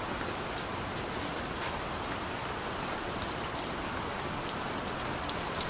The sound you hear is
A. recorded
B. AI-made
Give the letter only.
A